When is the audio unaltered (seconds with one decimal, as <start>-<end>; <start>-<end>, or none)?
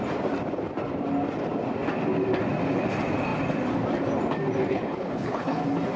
0.0-4.7; 5.6-6.0